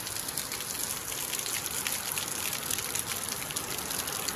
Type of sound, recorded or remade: recorded